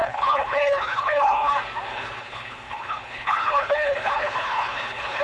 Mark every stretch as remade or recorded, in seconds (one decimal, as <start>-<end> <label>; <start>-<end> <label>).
0.0-1.5 remade; 1.5-1.9 recorded; 1.9-5.2 remade